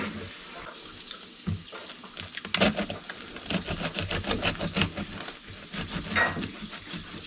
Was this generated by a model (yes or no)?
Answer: no